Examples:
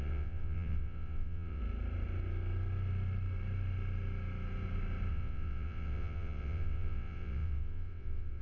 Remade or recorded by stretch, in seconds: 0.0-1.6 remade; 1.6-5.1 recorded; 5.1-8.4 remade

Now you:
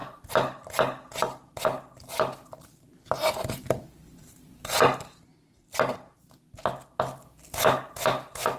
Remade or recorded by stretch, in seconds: 0.0-8.6 recorded

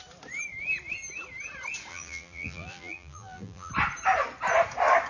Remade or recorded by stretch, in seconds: 0.0-1.9 recorded; 1.9-3.7 remade; 3.7-5.1 recorded

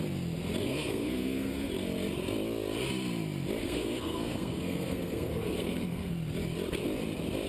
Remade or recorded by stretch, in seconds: 0.0-0.6 recorded; 0.6-1.7 remade; 1.7-3.6 recorded; 3.6-6.1 remade; 6.1-7.5 recorded

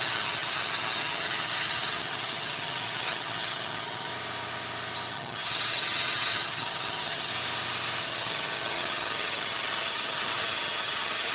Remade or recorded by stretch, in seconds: 0.0-4.1 remade; 4.1-5.1 recorded; 5.1-7.3 remade; 7.3-8.0 recorded; 8.0-11.3 remade

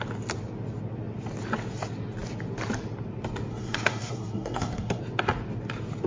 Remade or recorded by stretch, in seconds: 0.0-3.5 recorded; 3.5-5.0 remade; 5.0-6.1 recorded

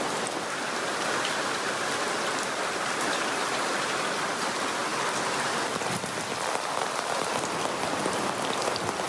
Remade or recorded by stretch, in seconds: 0.0-9.1 recorded

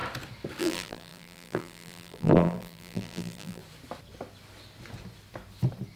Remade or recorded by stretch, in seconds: 0.0-0.6 recorded; 0.6-3.6 remade; 3.6-6.0 recorded